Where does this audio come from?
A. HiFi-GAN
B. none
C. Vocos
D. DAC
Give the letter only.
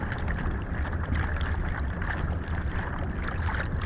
B